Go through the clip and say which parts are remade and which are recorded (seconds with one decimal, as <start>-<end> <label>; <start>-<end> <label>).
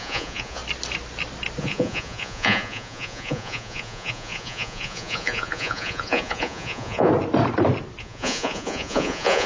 0.0-0.6 remade; 0.6-1.6 recorded; 1.6-7.1 remade; 7.1-8.0 recorded; 8.0-9.5 remade